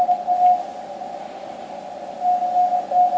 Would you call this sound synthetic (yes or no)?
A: no